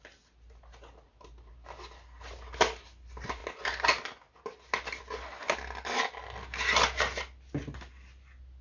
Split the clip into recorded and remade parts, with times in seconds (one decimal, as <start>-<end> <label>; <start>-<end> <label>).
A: 0.0-8.6 recorded